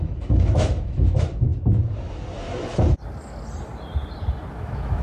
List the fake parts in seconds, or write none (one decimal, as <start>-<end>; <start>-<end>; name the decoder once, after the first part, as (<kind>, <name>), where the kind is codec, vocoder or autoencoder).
0.0-1.5 (autoencoder, DAC-VAE); 4.5-5.0